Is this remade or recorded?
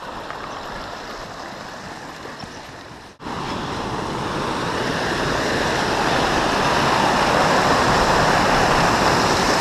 recorded